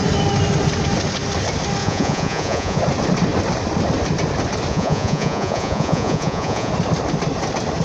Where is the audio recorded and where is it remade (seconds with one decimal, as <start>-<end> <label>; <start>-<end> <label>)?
0.0-1.8 recorded; 1.8-2.8 remade; 2.8-4.7 recorded; 4.7-6.7 remade; 6.7-7.8 recorded